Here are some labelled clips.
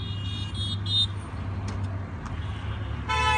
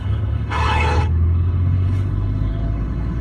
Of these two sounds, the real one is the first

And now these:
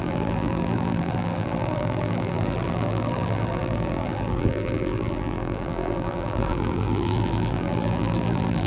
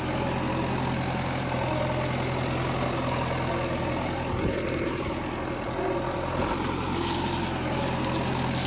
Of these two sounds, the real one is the second